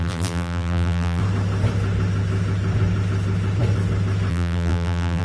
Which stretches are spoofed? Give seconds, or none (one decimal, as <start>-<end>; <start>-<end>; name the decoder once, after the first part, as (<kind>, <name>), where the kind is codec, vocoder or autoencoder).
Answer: 0.0-1.2 (vocoder, BigVGAN v2); 4.3-5.2

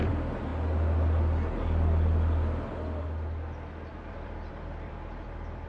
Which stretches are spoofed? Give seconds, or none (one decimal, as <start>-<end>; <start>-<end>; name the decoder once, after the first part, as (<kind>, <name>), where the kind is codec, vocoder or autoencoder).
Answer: 0.0-0.5 (vocoder, BigVGAN v2); 3.9-5.7

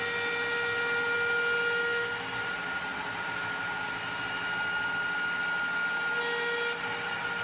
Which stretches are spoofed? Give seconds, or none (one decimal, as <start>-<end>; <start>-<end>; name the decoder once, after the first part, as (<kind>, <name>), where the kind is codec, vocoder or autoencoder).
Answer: none

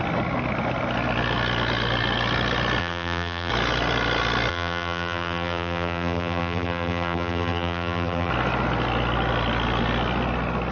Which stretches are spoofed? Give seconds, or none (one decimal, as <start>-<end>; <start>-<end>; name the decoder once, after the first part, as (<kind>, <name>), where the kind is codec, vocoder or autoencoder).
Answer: 2.8-3.5 (vocoder, BigVGAN v2); 4.5-8.3

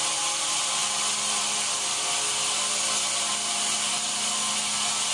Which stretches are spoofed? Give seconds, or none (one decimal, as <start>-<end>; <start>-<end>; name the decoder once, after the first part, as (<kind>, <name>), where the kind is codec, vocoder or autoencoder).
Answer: none

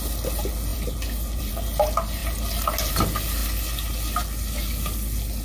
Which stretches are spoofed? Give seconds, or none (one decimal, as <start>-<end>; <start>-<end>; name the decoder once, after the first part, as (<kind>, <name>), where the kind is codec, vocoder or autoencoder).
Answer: 0.7-1.5 (vocoder, BigVGAN v2)

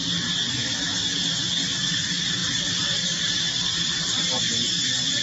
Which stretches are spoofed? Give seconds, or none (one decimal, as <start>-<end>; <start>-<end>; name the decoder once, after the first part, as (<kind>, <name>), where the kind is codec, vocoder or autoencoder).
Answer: 1.4-5.2 (vocoder, BigVGAN v2)